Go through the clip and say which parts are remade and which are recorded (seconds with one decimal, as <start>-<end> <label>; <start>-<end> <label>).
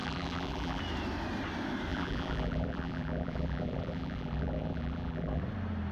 0.0-0.8 remade; 0.8-1.9 recorded; 1.9-5.4 remade; 5.4-5.9 recorded